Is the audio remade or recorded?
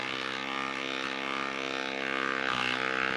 recorded